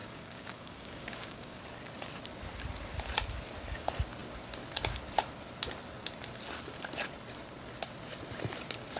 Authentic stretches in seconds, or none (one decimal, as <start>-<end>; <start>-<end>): 1.6-9.0